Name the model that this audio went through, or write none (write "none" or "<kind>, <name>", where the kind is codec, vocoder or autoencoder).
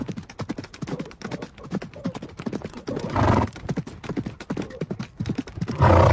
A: none